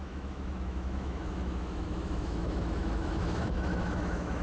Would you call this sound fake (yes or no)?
yes